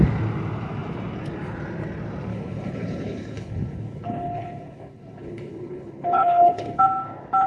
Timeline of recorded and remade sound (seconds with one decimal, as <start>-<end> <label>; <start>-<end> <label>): 0.0-2.3 recorded; 2.3-6.8 remade; 6.8-7.5 recorded

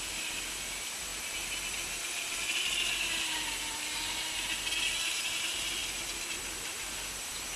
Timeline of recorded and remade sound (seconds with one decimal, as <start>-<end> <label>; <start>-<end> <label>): 0.0-7.6 recorded

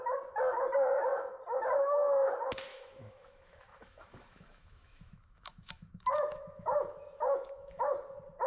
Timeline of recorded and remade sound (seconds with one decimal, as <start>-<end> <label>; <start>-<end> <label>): 0.0-2.7 recorded; 2.7-7.8 remade; 7.8-8.5 recorded